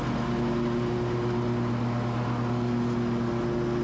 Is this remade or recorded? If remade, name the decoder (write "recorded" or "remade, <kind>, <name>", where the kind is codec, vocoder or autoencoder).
recorded